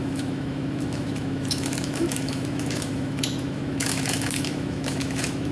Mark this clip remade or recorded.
remade